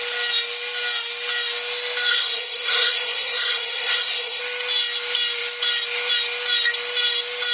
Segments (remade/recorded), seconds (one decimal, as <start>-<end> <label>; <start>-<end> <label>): 0.0-2.1 recorded; 2.1-4.4 remade; 4.4-7.5 recorded